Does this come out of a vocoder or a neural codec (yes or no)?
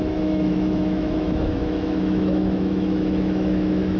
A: yes